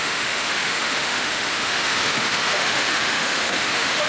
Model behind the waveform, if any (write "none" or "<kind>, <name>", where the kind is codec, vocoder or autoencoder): autoencoder, DAC-VAE